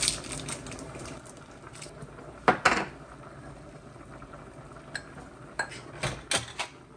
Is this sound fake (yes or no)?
no